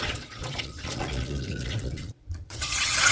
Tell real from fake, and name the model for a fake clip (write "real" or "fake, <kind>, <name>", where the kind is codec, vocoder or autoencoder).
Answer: fake, vocoder, Vocos